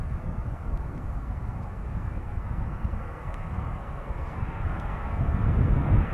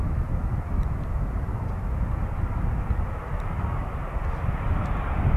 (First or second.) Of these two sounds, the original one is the second